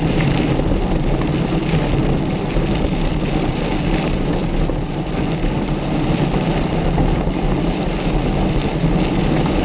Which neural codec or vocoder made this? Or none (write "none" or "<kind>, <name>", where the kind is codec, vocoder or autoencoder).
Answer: none